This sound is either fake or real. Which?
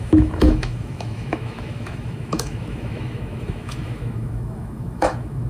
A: fake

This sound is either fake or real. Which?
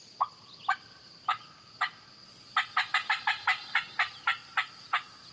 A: real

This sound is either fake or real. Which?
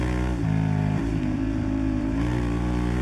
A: fake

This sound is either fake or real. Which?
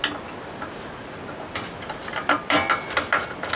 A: real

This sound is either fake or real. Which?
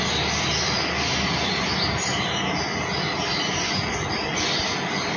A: real